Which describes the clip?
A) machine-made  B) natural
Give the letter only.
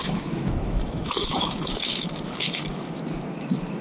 A